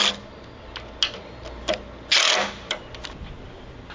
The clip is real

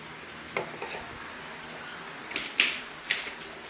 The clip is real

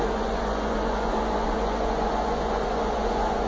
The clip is fake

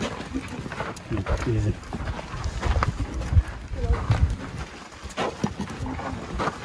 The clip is real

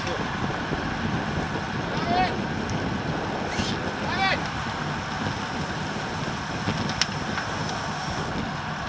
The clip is real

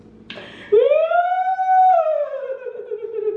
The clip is real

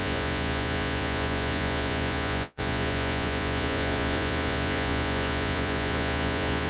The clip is fake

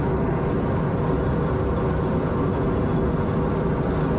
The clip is real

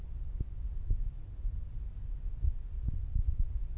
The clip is real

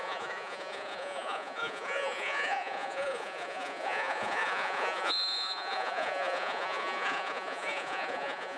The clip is fake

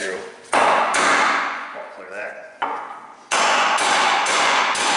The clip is fake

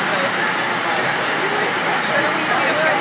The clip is real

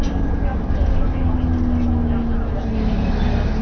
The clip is real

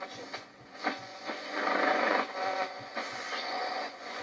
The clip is fake